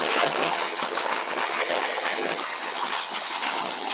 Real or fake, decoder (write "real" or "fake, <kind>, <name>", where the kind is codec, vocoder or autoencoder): fake, vocoder, HiFi-GAN